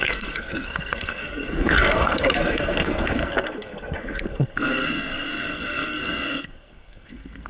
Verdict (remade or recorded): remade